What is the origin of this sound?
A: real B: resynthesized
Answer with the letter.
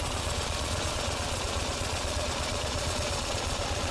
B